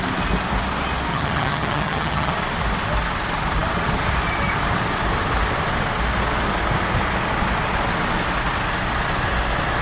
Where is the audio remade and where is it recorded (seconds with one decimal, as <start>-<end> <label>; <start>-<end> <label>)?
0.0-1.1 recorded; 1.1-2.3 remade; 2.3-9.8 recorded